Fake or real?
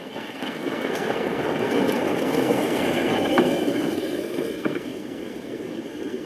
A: fake